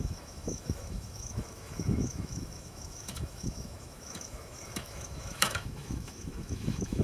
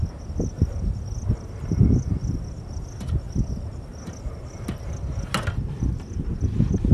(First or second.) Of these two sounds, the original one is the second